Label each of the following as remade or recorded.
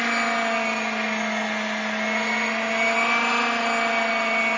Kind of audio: recorded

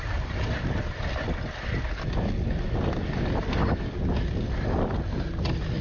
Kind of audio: recorded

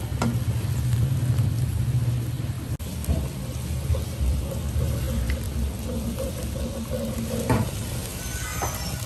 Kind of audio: recorded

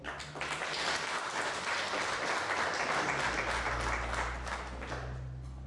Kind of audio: recorded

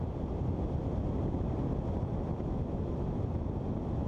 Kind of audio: recorded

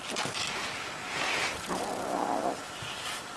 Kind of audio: recorded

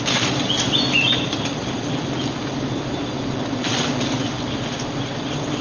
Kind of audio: recorded